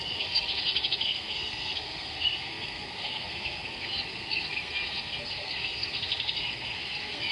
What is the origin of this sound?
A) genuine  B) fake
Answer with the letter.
B